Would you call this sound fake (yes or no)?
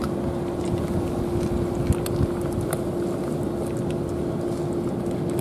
no